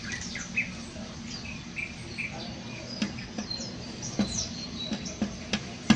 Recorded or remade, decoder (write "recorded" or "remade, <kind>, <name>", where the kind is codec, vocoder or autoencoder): recorded